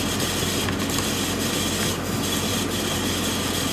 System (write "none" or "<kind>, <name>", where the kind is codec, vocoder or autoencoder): none